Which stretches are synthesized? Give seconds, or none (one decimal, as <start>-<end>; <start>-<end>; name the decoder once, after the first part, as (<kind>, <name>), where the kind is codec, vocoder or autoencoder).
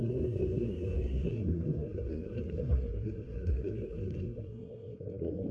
0.0-5.5 (codec, SNAC)